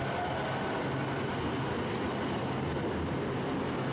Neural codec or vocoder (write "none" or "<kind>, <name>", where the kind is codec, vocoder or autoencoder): none